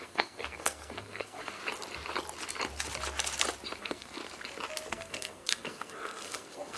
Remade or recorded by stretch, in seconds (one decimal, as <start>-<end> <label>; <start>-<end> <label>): 0.0-1.6 remade; 1.6-3.8 recorded; 3.8-4.2 remade; 4.2-4.9 recorded; 4.9-6.8 remade